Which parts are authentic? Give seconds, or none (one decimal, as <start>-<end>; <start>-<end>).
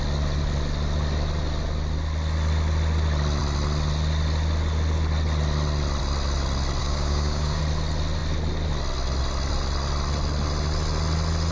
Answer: 0.0-6.8; 7.6-11.5